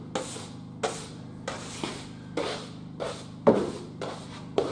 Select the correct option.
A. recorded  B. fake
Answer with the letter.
A